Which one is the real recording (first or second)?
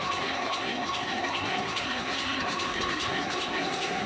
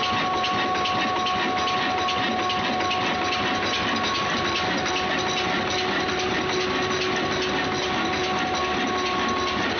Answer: second